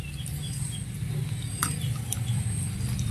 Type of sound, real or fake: real